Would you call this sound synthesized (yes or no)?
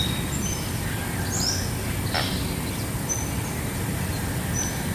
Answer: no